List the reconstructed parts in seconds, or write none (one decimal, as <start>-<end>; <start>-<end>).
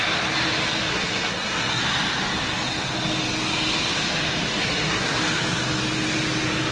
0.9-1.8; 4.6-5.2